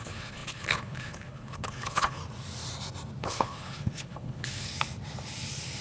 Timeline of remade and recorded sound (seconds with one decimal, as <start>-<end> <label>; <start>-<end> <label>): 0.0-2.2 remade; 2.2-3.2 recorded; 3.2-4.7 remade; 4.7-5.8 recorded